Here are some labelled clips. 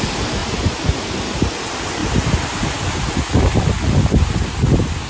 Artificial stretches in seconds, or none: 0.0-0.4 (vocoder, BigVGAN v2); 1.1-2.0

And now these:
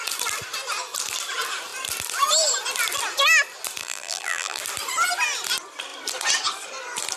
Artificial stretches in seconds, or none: 3.8-4.6 (vocoder, BigVGAN v2)

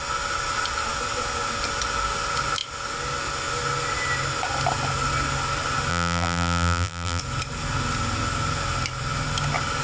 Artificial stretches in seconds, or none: 5.9-7.2 (vocoder, BigVGAN v2)

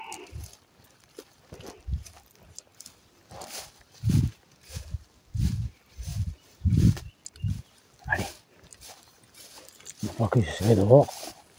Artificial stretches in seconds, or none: 0.0-2.7 (vocoder, BigVGAN v2); 4.2-8.1; 9.5-11.6

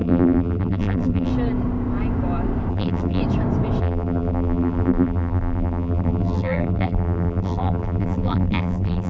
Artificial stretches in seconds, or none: 0.0-1.3 (vocoder, BigVGAN v2); 2.7-3.2; 3.8-9.1